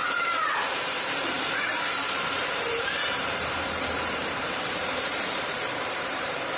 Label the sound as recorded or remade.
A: remade